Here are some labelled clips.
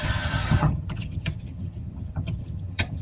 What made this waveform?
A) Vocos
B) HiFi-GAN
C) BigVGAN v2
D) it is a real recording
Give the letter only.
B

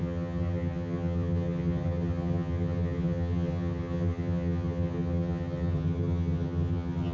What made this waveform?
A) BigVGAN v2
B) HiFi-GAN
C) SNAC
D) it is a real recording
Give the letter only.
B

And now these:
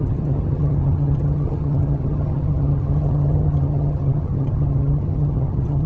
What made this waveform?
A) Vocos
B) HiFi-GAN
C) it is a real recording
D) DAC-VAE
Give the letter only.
B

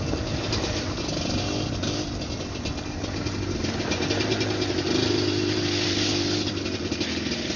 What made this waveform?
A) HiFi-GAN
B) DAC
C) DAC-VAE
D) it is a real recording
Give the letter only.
D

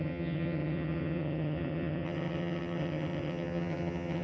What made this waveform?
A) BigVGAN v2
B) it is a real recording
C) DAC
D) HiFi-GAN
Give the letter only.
D